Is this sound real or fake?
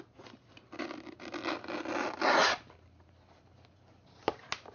real